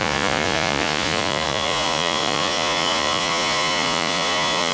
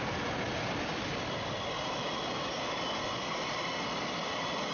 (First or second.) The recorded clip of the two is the second